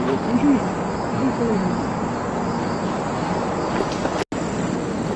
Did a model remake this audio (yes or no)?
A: no